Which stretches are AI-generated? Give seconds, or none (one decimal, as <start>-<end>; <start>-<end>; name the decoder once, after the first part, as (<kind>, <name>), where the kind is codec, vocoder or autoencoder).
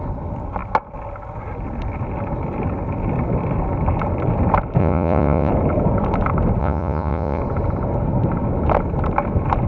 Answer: 4.8-5.5 (vocoder, Vocos); 6.6-7.4